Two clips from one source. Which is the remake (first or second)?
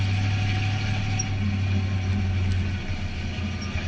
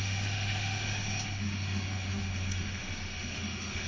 second